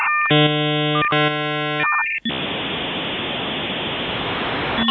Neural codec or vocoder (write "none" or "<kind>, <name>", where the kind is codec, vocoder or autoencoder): none